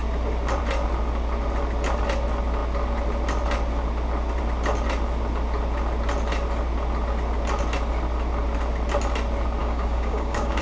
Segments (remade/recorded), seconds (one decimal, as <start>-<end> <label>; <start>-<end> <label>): 0.0-9.6 recorded; 9.6-10.6 remade